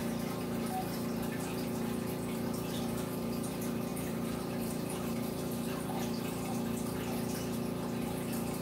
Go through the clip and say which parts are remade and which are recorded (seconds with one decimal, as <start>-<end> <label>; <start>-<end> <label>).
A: 0.0-3.9 recorded; 3.9-5.9 remade; 5.9-8.6 recorded